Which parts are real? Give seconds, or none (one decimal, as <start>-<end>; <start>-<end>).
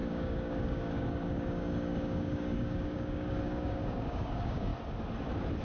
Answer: 4.7-5.6